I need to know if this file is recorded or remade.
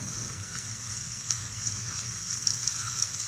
remade